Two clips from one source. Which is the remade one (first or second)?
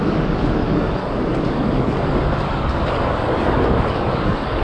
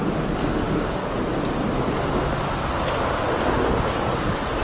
first